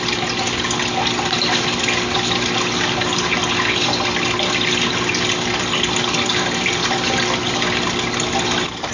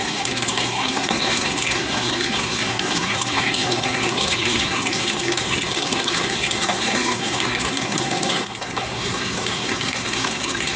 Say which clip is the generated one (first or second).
second